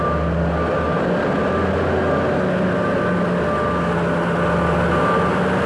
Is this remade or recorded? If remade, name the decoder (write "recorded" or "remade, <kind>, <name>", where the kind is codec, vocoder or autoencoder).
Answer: recorded